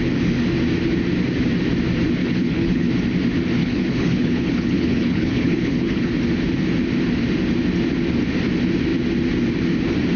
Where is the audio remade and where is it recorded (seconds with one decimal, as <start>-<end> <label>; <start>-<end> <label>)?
0.0-2.2 recorded; 2.2-2.9 remade; 2.9-3.6 recorded; 3.6-6.1 remade; 6.1-10.2 recorded